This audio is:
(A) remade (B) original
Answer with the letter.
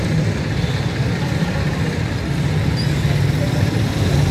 B